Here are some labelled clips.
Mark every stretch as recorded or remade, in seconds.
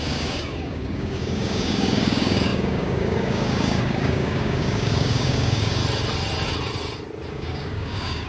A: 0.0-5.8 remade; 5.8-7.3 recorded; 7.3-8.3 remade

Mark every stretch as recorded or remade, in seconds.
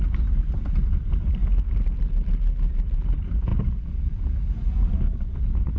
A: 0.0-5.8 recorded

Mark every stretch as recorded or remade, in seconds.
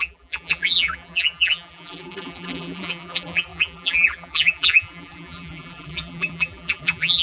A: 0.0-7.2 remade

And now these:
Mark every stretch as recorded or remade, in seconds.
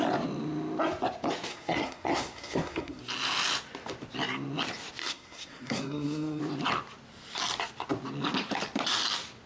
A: 0.0-1.5 recorded; 1.5-3.0 remade; 3.0-5.0 recorded; 5.0-6.4 remade; 6.4-9.5 recorded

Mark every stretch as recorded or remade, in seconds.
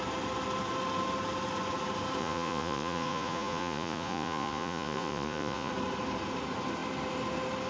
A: 0.0-2.2 recorded; 2.2-5.7 remade; 5.7-7.7 recorded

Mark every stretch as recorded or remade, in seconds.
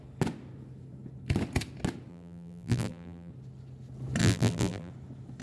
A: 0.0-2.1 recorded; 2.1-3.3 remade; 3.3-4.2 recorded; 4.2-4.9 remade; 4.9-5.4 recorded